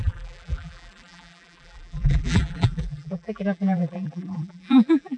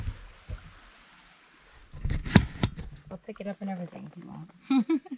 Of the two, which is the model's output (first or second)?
first